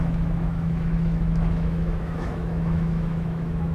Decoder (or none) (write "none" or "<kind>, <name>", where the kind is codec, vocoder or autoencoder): autoencoder, DAC-VAE